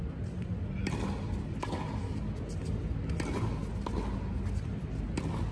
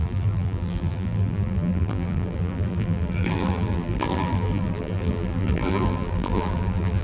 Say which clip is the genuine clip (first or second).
first